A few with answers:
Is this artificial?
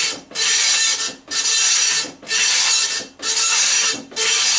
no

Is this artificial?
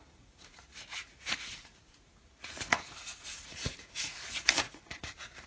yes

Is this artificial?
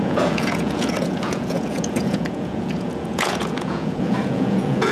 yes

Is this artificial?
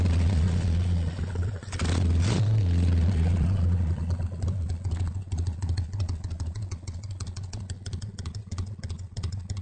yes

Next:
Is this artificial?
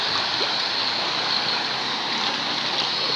no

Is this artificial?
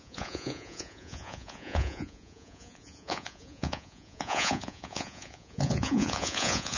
yes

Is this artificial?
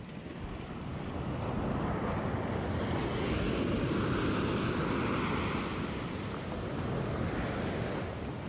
no